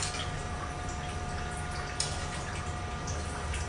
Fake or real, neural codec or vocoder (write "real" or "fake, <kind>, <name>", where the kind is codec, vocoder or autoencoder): real